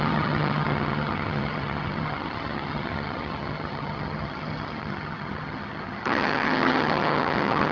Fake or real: fake